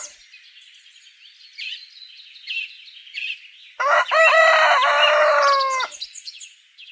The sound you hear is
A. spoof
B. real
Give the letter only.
B